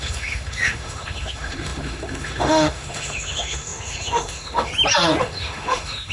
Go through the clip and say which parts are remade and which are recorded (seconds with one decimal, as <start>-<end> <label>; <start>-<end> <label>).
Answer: 0.0-4.7 remade; 4.7-5.2 recorded; 5.2-6.1 remade

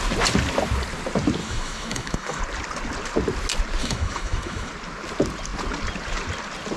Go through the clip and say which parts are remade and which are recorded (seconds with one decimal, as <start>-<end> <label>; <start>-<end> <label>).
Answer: 0.0-1.4 recorded; 1.4-2.4 remade; 2.4-3.8 recorded; 3.8-4.7 remade; 4.7-6.8 recorded

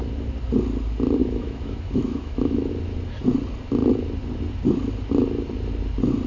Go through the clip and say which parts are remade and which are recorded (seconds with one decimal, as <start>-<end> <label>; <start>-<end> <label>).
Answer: 0.0-1.2 recorded; 1.2-2.7 remade; 2.7-6.3 recorded